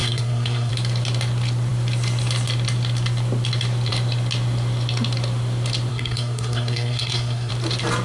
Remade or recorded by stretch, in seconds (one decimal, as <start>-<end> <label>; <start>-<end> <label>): 0.0-0.7 remade; 0.7-5.9 recorded; 5.9-7.5 remade; 7.5-8.0 recorded